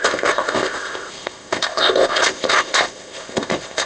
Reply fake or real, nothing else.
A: fake